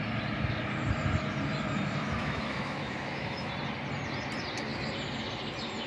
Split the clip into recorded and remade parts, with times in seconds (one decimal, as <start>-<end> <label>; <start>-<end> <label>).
0.0-2.2 recorded; 2.2-3.5 remade; 3.5-5.9 recorded